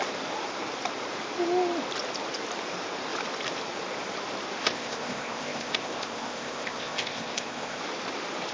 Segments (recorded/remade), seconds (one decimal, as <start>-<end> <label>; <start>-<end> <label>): 0.0-4.6 recorded; 4.6-7.8 remade; 7.8-8.5 recorded